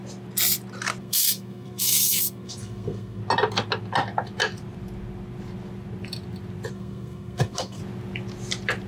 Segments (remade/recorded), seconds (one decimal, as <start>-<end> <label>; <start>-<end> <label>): 0.0-1.0 recorded; 1.0-3.2 remade; 3.2-6.7 recorded; 6.7-7.8 remade; 7.8-8.9 recorded